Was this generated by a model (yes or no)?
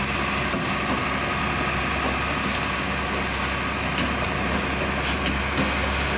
no